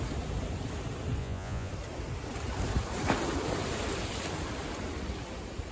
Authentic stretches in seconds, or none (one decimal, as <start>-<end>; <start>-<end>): 0.0-1.2; 1.7-5.7

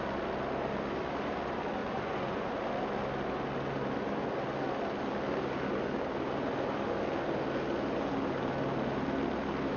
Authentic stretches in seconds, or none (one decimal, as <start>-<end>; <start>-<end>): 0.0-1.8; 2.5-9.8

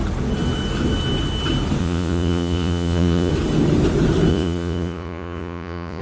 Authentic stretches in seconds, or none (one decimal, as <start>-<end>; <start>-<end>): 0.0-1.8; 3.3-4.3

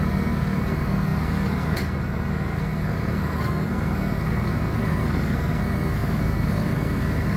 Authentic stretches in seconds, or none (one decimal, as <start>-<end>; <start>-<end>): none

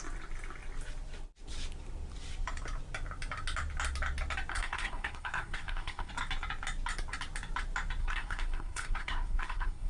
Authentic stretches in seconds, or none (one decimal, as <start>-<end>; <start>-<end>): 0.0-4.5; 6.1-8.0

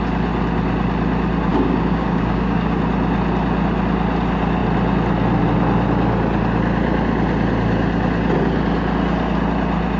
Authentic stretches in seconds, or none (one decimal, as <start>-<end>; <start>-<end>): 0.0-1.5; 2.8-10.0

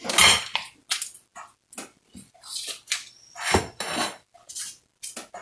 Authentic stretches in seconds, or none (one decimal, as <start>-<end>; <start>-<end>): 0.0-5.4